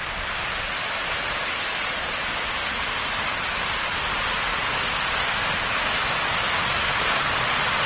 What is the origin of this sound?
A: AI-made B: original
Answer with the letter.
B